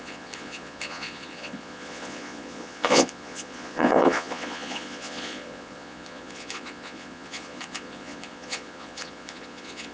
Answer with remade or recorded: remade